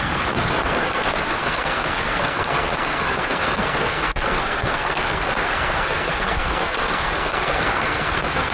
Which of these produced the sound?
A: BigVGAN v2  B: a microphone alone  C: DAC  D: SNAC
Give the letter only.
D